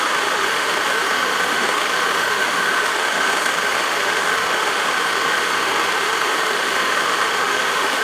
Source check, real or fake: fake